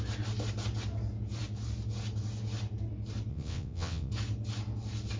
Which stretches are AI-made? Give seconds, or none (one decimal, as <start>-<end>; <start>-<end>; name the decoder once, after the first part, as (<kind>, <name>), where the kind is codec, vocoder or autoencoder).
3.3-4.1 (vocoder, WaveNeXt)

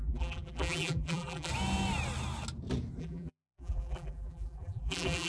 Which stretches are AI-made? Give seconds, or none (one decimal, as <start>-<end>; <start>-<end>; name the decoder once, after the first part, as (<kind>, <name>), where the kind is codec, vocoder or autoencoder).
0.0-1.5 (vocoder, BigVGAN v2); 3.0-5.3